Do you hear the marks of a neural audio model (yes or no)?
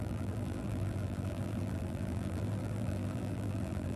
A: yes